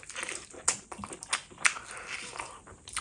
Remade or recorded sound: recorded